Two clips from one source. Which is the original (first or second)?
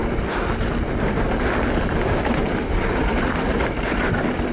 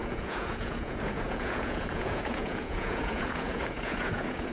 first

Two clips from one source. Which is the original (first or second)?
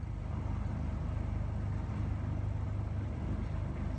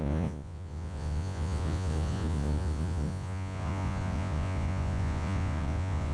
first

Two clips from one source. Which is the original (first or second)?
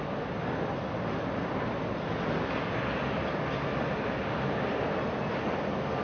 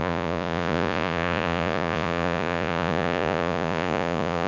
first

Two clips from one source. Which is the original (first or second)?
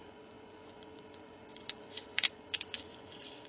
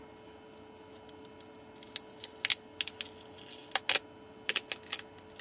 second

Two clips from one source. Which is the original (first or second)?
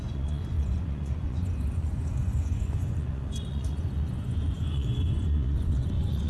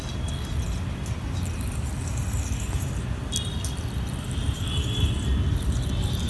second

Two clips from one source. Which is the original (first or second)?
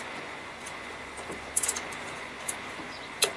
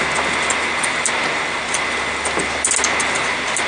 second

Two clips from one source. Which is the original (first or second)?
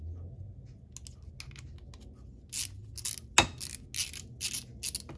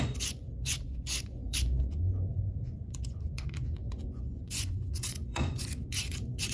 first